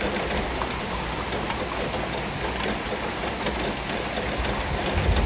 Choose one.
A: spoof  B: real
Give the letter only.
B